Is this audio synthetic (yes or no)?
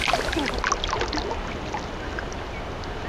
no